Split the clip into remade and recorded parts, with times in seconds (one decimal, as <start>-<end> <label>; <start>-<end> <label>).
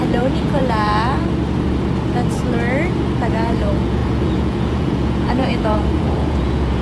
0.0-0.6 remade; 0.6-3.3 recorded; 3.3-6.8 remade